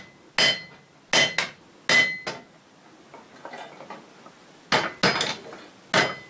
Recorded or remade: recorded